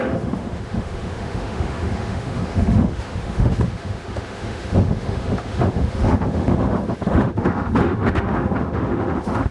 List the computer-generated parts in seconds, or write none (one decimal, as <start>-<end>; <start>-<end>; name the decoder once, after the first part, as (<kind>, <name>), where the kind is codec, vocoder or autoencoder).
0.0-9.5 (autoencoder, DAC-VAE)